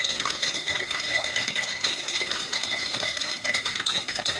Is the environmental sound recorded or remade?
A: remade